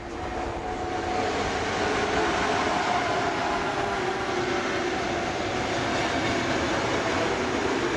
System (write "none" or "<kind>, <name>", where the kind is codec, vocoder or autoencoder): none